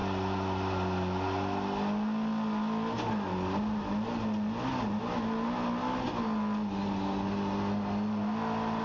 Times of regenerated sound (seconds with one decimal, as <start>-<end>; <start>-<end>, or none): none